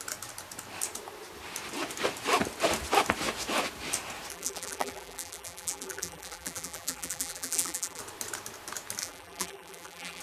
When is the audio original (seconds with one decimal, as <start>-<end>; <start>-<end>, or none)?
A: 0.0-4.3; 8.0-9.0